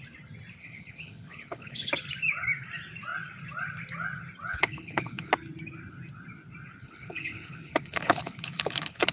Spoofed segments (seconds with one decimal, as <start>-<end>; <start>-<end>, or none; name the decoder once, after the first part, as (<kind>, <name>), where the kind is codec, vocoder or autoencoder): 0.6-1.9 (codec, HILCodec); 4.5-5.3; 6.8-9.1